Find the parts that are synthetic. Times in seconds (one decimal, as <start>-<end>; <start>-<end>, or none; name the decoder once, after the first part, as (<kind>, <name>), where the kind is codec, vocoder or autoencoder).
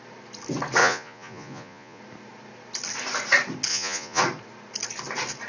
0.8-2.0 (vocoder, Vocos); 3.7-4.2